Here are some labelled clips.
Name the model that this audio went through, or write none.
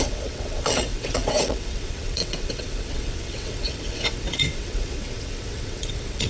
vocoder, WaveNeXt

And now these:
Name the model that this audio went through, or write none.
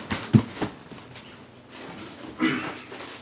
none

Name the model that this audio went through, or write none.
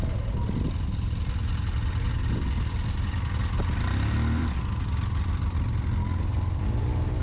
none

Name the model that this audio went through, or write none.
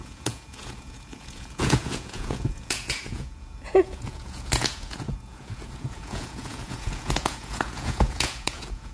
vocoder, Vocos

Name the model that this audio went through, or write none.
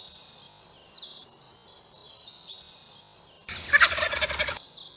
none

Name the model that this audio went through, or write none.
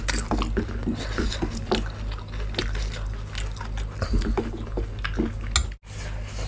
none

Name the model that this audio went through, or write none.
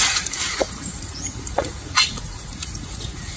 vocoder, Vocos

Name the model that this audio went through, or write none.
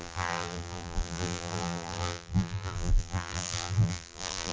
vocoder, BigVGAN v2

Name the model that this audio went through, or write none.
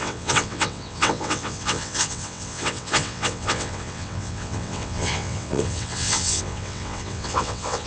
vocoder, WaveNeXt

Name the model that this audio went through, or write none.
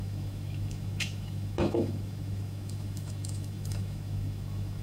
autoencoder, DAC-VAE